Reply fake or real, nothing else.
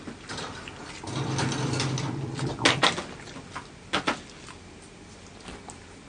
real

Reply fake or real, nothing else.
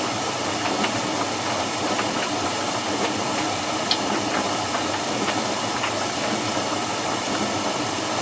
fake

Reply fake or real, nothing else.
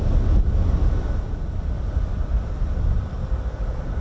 real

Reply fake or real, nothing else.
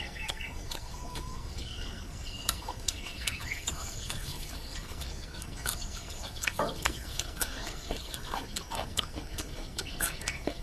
fake